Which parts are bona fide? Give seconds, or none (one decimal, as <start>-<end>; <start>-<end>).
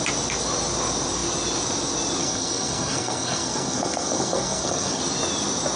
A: 0.0-2.2; 5.0-5.8